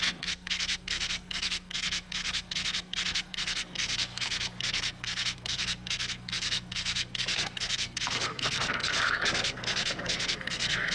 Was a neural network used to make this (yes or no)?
yes